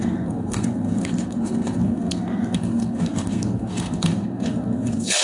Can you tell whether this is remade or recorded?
remade